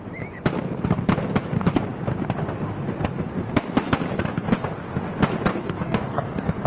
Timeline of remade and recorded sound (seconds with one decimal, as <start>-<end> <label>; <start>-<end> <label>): 0.0-5.5 recorded; 5.5-6.7 remade